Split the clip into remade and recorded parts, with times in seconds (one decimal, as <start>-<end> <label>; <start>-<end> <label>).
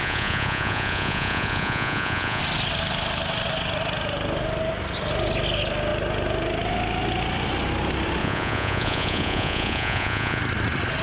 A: 0.0-2.4 remade; 2.4-8.2 recorded; 8.2-10.4 remade; 10.4-11.0 recorded